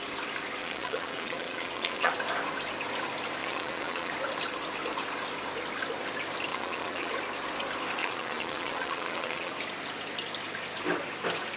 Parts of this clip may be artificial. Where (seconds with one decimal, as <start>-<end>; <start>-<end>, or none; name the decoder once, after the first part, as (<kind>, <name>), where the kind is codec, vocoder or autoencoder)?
0.6-2.1 (vocoder, Vocos); 3.4-4.1; 6.5-7.1; 8.0-9.5